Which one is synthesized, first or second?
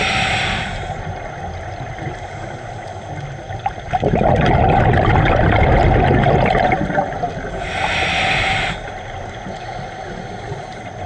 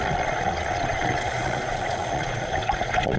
second